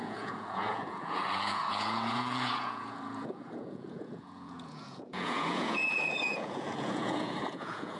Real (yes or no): no